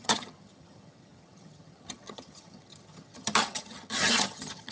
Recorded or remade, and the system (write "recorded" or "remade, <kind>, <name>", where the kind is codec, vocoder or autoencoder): remade, vocoder, HiFi-GAN